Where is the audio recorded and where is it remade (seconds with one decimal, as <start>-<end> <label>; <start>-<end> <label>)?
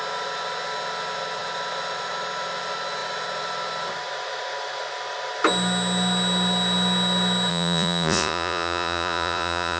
0.0-7.5 recorded; 7.5-9.8 remade